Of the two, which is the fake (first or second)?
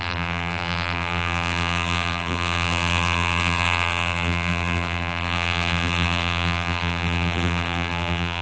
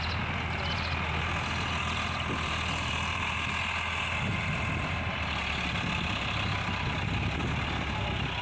first